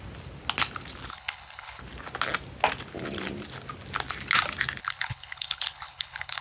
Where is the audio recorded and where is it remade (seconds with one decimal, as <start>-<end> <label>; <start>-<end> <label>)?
0.0-1.1 recorded; 1.1-1.8 remade; 1.8-4.8 recorded; 4.8-6.4 remade